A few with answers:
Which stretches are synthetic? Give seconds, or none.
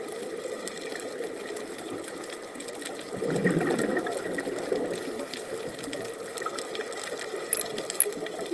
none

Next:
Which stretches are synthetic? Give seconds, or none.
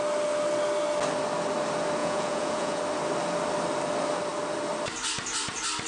2.0-2.8 (vocoder, Vocos)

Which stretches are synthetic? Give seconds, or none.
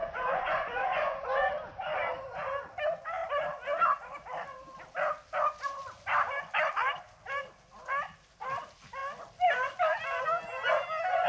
0.0-1.5 (vocoder, Vocos)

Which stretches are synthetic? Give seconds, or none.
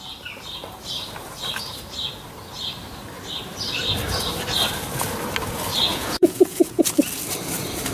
5.9-6.8 (vocoder, Vocos)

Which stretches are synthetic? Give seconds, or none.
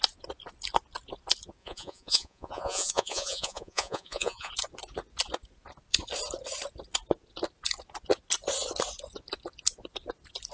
1.6-4.5 (vocoder, Vocos)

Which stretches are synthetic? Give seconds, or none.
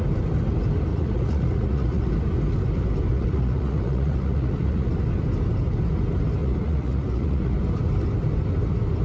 0.9-2.1 (vocoder, Vocos); 3.1-4.9; 6.4-7.5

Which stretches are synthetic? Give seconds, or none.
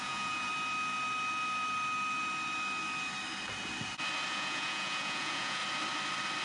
0.0-0.5 (vocoder, Vocos); 4.3-5.6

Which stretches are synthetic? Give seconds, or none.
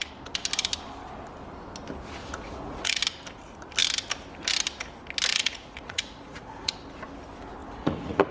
2.2-3.0 (vocoder, Vocos); 5.3-6.7; 7.6-8.3